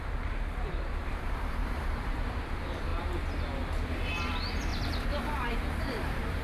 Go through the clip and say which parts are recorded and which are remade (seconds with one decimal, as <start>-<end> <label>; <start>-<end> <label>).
0.0-1.0 recorded; 1.0-2.3 remade; 2.3-4.7 recorded; 4.7-6.4 remade